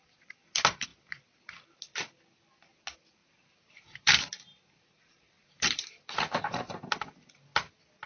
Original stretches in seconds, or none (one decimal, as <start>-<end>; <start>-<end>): 0.0-3.2; 6.9-8.1

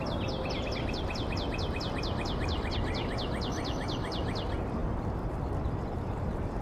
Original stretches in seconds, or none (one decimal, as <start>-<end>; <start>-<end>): 0.0-6.6

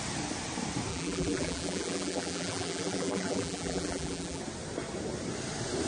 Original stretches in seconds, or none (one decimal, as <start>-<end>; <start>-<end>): 0.0-0.9; 4.4-5.9

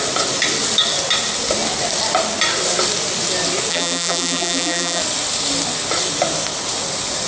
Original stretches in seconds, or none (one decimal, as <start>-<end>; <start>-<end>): 0.0-3.7; 5.0-7.3

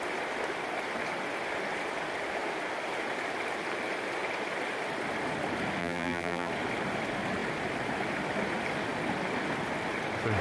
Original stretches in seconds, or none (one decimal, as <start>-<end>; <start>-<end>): 0.0-5.8; 6.5-10.4